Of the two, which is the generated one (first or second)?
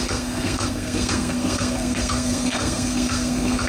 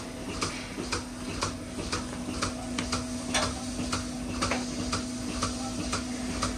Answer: first